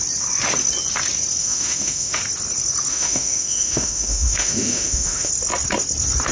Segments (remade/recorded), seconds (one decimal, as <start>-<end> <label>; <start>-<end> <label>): 0.0-1.4 recorded; 1.4-2.2 remade; 2.2-2.9 recorded; 2.9-5.3 remade; 5.3-6.3 recorded